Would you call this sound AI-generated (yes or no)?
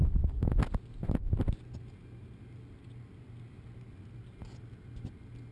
no